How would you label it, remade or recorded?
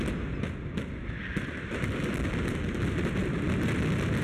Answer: recorded